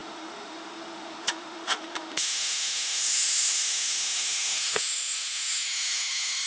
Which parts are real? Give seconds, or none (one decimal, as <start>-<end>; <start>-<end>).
none